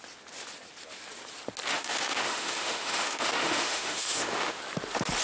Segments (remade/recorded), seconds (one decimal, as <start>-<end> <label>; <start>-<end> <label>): 0.0-1.7 recorded; 1.7-4.6 remade; 4.6-5.2 recorded